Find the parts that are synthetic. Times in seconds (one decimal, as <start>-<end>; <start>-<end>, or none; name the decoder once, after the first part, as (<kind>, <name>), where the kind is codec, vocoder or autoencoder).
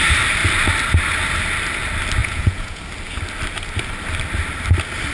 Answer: 2.2-2.8 (vocoder, Vocos)